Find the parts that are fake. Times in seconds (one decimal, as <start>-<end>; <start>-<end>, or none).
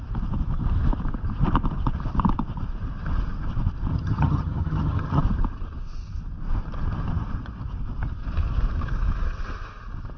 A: 3.9-5.2